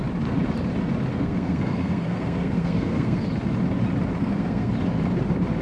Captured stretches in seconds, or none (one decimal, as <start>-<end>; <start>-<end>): 0.0-1.1; 3.2-4.2; 4.7-5.6